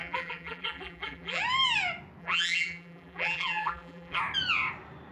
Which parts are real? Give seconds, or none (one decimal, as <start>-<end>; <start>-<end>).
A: 1.4-2.2; 4.2-5.1